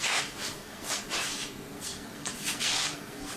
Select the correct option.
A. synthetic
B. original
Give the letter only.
A